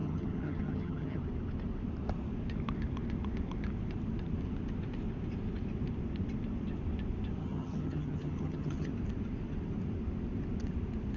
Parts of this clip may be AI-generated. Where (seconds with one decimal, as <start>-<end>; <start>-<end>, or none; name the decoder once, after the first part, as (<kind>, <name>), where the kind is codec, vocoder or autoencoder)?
0.0-1.2 (vocoder, HiFi-GAN); 7.4-8.9